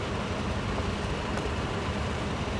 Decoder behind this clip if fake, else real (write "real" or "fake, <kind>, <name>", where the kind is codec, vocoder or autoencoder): real